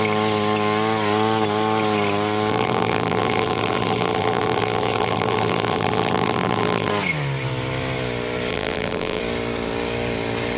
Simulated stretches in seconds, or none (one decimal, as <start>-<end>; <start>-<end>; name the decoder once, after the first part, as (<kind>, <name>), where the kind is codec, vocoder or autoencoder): 2.5-6.9 (vocoder, BigVGAN v2); 8.5-9.2